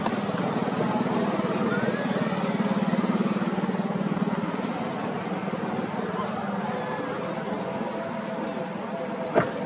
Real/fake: real